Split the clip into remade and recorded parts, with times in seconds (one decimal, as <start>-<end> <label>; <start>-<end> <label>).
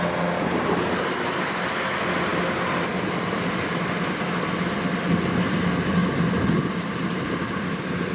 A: 0.0-6.0 recorded; 6.0-8.1 remade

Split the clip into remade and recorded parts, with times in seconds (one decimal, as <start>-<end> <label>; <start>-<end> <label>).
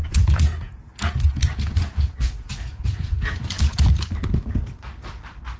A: 0.0-3.4 remade; 3.4-5.6 recorded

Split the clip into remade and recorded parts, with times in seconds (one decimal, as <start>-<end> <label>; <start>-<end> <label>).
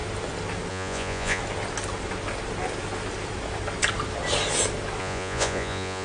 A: 0.0-0.7 recorded; 0.7-1.4 remade; 1.4-5.0 recorded; 5.0-6.0 remade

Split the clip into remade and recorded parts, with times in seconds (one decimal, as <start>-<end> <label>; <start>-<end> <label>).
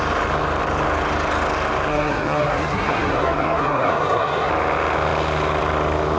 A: 0.0-1.9 recorded; 1.9-4.5 remade; 4.5-6.2 recorded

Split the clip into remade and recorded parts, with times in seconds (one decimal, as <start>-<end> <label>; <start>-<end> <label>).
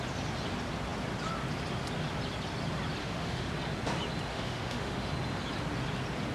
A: 0.0-3.0 recorded; 3.0-3.5 remade; 3.5-4.3 recorded; 4.3-5.1 remade; 5.1-6.3 recorded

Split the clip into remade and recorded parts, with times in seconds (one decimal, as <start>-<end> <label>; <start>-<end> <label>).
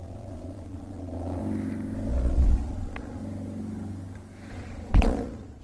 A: 0.0-1.4 remade; 1.4-2.1 recorded; 2.1-3.2 remade; 3.2-4.5 recorded; 4.5-5.6 remade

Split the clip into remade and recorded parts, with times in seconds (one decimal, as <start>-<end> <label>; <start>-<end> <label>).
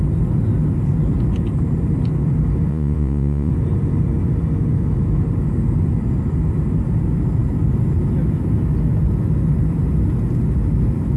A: 0.0-2.7 recorded; 2.7-3.5 remade; 3.5-11.2 recorded